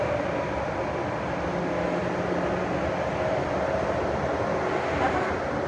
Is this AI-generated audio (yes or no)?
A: no